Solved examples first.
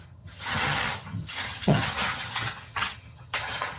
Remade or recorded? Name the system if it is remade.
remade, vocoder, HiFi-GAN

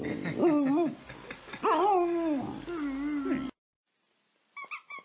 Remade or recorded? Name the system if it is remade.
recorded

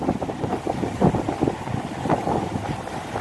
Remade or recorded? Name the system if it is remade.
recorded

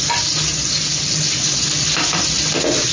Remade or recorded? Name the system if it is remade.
recorded